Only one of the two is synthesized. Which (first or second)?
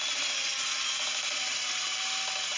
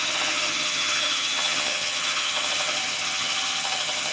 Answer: second